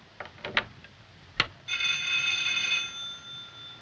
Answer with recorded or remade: recorded